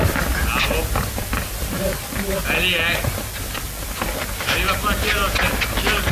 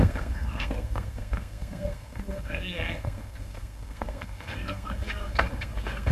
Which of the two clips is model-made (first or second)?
second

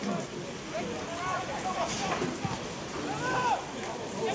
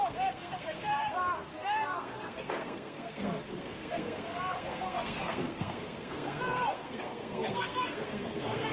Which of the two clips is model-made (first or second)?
second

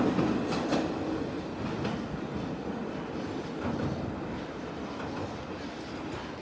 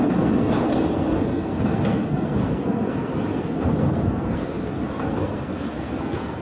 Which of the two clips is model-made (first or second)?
second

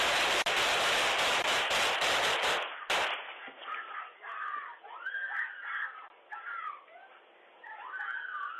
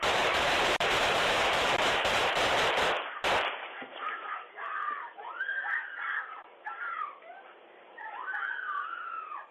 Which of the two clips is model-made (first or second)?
second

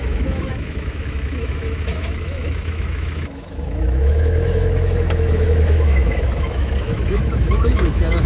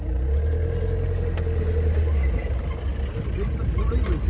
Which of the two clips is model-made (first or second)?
first